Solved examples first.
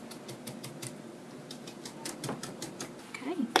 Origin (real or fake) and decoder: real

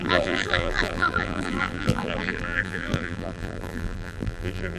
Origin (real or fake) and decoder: fake, vocoder, BigVGAN v2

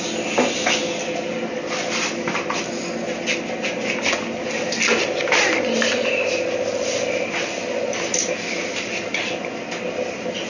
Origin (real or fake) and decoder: real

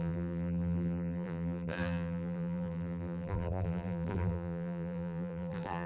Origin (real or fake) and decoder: fake, vocoder, BigVGAN v2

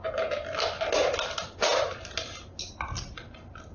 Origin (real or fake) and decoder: real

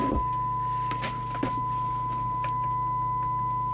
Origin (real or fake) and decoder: real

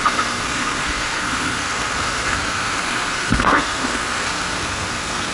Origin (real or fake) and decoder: fake, codec, SNAC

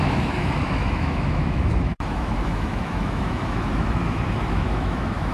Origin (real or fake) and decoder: fake, autoencoder, DAC-VAE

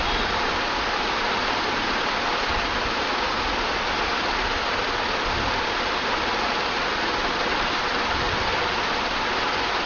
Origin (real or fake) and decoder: real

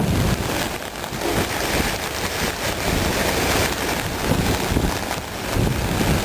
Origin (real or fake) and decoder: real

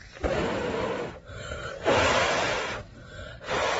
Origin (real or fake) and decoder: real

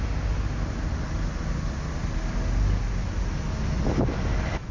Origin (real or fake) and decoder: real